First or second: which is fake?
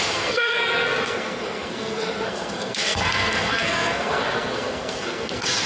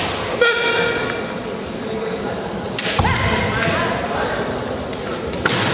first